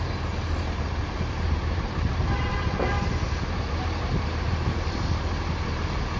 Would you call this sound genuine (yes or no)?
no